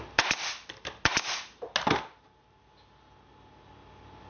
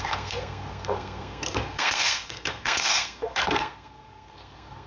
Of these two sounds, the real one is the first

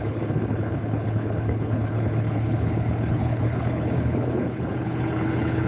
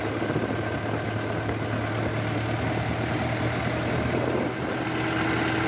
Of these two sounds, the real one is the second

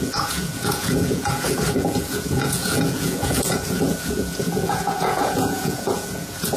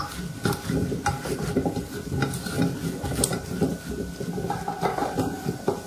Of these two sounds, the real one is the second